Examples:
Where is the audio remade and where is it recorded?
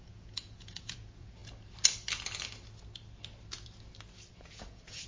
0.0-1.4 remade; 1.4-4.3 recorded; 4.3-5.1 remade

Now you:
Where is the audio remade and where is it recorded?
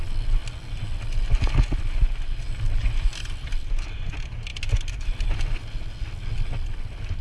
0.0-7.2 recorded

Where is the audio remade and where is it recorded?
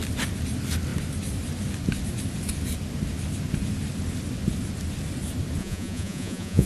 0.0-5.6 recorded; 5.6-6.7 remade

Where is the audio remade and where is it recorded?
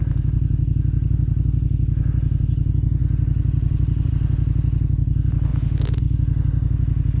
0.0-3.0 recorded; 3.0-4.1 remade; 4.1-7.2 recorded